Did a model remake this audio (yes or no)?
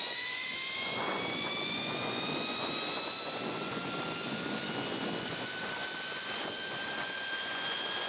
yes